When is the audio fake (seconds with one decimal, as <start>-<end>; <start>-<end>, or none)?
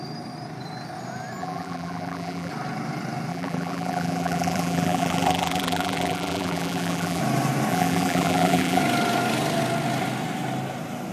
1.4-2.5; 3.3-7.2; 7.7-8.8